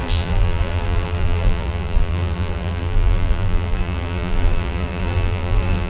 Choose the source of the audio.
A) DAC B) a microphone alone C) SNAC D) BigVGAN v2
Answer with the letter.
D